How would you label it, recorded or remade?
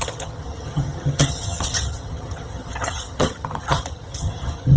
remade